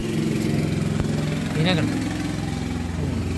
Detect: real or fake real